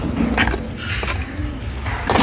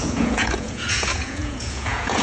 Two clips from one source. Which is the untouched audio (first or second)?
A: first